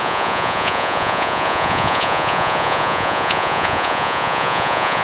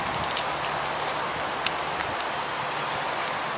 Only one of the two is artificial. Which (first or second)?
first